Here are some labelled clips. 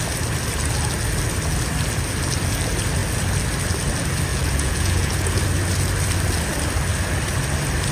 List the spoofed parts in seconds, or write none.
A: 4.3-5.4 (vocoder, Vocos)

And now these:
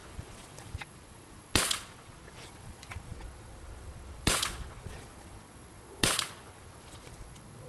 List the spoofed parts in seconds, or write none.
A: 0.0-7.7 (vocoder, Vocos)